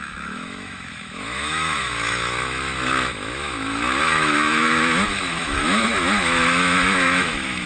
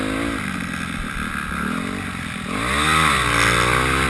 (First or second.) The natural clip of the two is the second